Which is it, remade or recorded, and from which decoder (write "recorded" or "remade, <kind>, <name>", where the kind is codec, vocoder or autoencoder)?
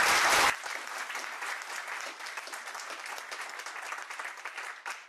recorded